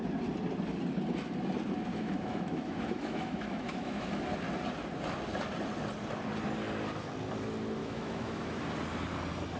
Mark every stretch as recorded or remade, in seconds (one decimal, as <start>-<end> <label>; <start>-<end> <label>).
0.0-1.9 recorded; 1.9-4.2 remade; 4.2-7.8 recorded; 7.8-8.6 remade; 8.6-9.6 recorded